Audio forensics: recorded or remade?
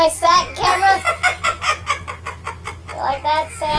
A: recorded